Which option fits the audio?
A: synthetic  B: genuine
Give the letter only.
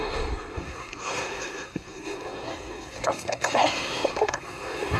A